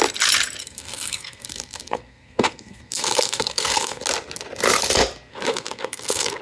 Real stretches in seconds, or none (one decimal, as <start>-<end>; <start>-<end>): 0.0-0.6; 4.0-5.3

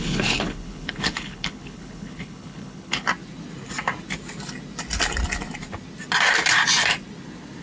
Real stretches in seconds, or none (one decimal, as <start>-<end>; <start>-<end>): 3.1-7.6

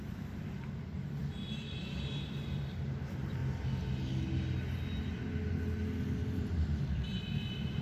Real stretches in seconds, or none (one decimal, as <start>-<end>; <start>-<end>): 3.4-6.0

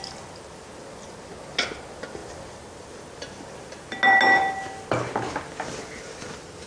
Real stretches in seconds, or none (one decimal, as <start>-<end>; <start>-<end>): 0.0-6.7

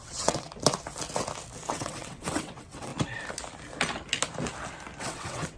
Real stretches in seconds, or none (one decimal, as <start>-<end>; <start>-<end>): 0.5-1.7; 2.9-5.0

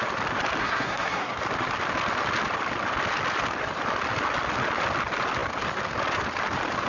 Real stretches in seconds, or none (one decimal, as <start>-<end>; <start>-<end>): 0.0-0.6; 1.4-6.9